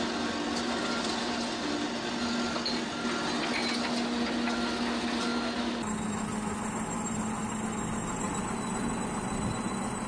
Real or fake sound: real